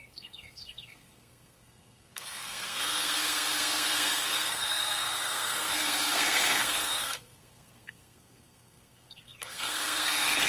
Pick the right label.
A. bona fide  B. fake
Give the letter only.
B